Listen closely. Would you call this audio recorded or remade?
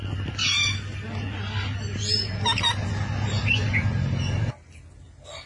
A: recorded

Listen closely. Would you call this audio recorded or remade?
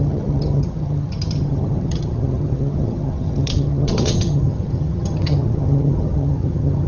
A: remade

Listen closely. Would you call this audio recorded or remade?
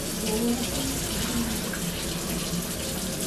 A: recorded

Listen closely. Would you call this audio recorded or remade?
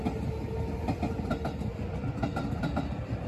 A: recorded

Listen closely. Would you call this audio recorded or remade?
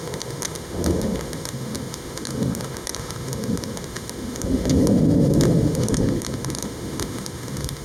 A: remade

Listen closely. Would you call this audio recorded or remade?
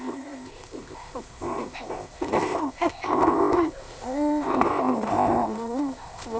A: remade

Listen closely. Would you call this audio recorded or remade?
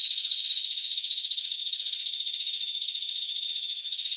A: remade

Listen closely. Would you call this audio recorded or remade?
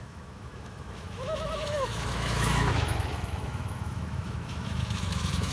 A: remade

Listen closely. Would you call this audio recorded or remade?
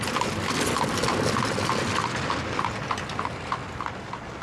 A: recorded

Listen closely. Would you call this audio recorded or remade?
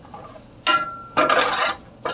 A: recorded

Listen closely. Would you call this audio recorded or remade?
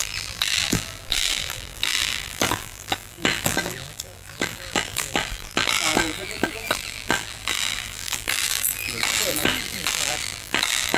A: remade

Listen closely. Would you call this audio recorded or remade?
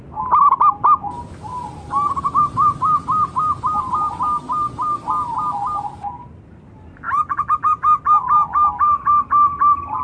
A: recorded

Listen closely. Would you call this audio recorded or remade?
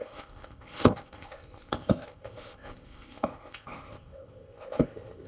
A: remade